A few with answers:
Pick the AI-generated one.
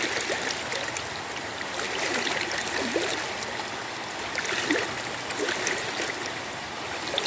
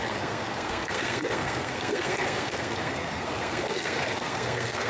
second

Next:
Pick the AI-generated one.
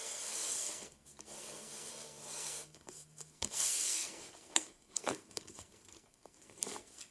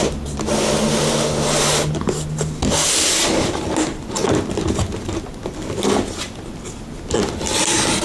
first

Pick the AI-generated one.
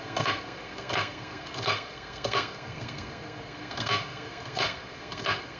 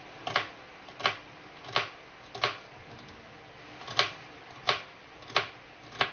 first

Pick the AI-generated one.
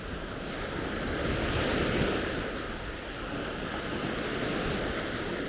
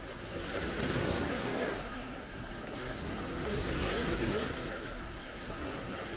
second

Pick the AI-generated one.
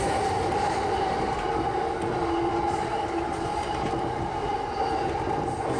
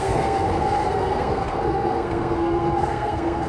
second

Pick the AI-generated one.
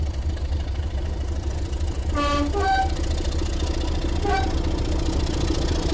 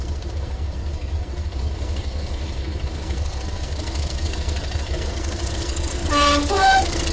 second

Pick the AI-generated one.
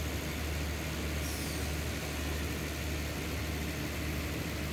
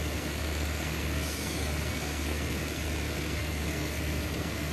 second